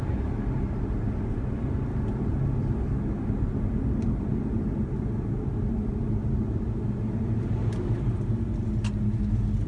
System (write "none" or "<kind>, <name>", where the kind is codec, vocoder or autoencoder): none